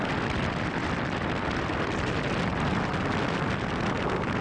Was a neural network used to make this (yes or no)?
no